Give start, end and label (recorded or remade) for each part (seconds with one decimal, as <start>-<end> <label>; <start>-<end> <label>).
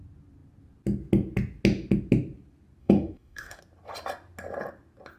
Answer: 0.0-2.8 recorded; 2.8-3.6 remade; 3.6-5.2 recorded